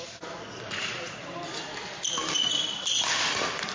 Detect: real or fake fake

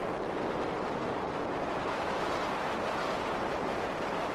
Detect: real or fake real